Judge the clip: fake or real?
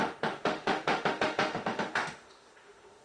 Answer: fake